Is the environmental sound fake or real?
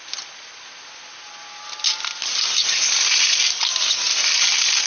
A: real